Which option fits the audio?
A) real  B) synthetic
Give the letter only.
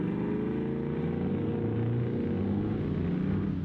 A